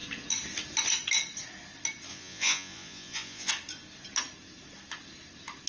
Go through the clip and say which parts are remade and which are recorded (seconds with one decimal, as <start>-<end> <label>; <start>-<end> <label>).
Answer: 0.0-2.1 recorded; 2.1-3.5 remade; 3.5-5.7 recorded